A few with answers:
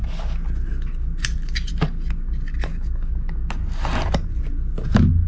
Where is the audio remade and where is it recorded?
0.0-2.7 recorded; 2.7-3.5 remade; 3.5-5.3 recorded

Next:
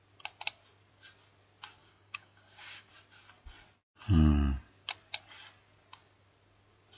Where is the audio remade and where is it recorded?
0.0-1.8 recorded; 1.8-2.9 remade; 2.9-7.0 recorded